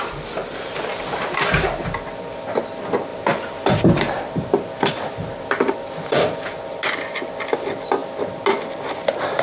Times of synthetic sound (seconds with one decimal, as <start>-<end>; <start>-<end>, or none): 0.4-2.0; 3.1-6.4